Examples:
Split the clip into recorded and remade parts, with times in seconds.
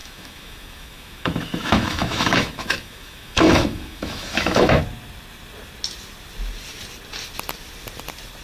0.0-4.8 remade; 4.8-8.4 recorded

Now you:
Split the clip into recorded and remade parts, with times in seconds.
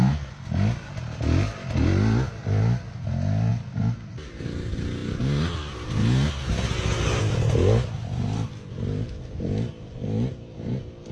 0.0-11.1 recorded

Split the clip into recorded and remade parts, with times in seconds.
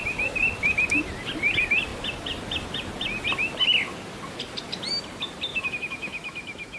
0.0-5.5 recorded; 5.5-6.8 remade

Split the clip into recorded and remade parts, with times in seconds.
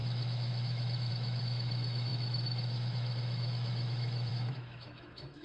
0.0-5.4 remade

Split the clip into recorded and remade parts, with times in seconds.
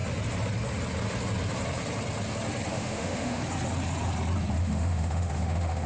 0.0-2.7 recorded; 2.7-3.4 remade; 3.4-4.6 recorded; 4.6-5.9 remade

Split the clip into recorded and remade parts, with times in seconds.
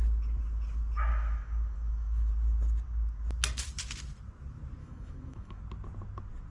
0.0-1.1 recorded; 1.1-2.3 remade; 2.3-4.8 recorded; 4.8-5.6 remade; 5.6-6.5 recorded